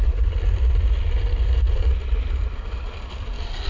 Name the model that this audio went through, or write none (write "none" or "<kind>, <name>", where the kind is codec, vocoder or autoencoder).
none